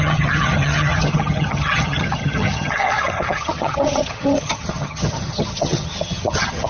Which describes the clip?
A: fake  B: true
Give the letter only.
A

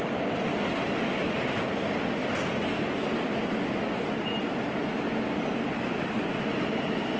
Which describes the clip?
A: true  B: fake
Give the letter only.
A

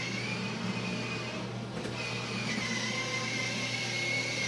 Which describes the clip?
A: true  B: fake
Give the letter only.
A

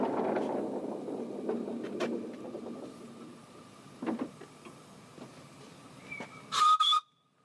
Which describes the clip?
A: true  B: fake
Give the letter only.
A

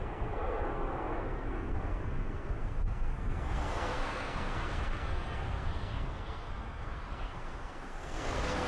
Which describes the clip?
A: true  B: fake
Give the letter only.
B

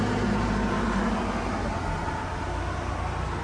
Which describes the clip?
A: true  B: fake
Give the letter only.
A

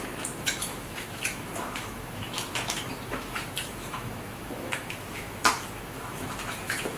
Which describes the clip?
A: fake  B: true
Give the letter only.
A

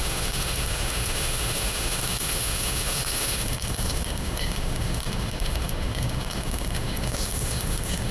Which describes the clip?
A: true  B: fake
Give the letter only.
B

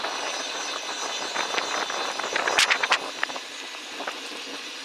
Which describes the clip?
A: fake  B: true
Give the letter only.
B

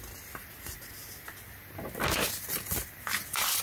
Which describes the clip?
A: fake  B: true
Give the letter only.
B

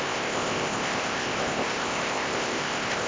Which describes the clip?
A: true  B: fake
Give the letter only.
B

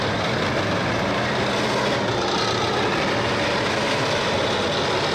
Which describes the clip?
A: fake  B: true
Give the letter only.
B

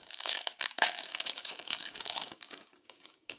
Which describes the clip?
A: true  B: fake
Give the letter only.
B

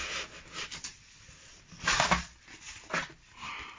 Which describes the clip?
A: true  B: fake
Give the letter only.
A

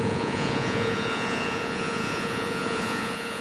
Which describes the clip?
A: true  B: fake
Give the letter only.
B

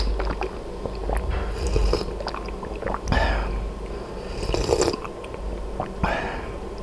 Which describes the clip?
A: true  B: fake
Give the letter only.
A